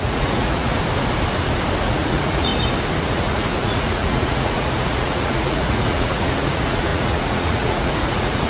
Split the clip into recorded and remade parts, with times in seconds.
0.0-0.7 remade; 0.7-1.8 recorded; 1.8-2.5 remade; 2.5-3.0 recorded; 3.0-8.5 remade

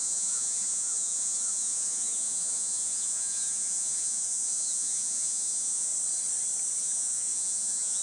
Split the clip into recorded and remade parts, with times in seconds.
0.0-5.9 remade; 5.9-6.8 recorded; 6.8-8.0 remade

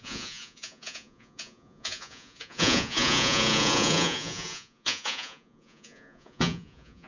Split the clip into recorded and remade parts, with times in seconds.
0.0-7.1 remade